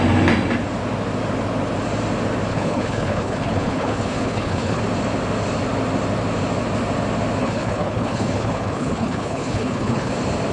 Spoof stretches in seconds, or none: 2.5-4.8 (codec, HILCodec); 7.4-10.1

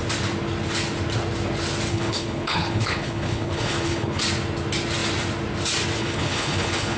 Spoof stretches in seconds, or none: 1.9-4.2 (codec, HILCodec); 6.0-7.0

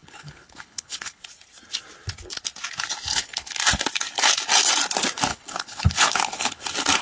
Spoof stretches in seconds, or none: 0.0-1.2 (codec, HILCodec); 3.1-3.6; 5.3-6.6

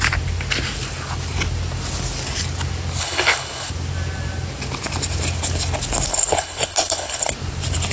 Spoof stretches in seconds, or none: 3.0-3.7 (codec, HILCodec); 6.1-7.3